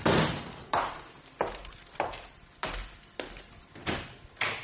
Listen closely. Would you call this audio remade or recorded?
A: recorded